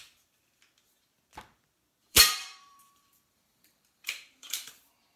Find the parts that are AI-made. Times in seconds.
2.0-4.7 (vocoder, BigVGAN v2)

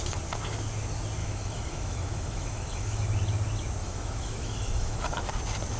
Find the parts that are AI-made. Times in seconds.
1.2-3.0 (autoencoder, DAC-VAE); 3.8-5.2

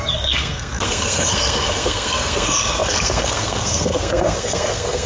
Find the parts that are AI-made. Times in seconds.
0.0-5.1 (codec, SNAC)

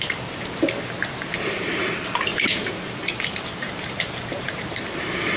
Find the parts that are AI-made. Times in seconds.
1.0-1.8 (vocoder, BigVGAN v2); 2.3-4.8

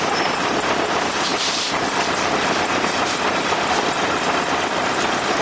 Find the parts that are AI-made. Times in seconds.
1.3-4.5 (vocoder, BigVGAN v2)

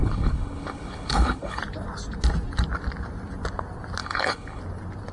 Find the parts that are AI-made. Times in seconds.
0.0-1.6 (codec, HILCodec); 4.0-4.6

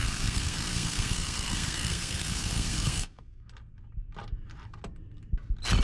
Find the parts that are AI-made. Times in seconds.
0.0-3.5 (codec, SNAC)